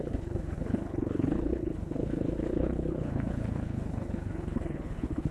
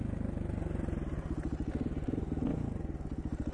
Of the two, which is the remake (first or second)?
first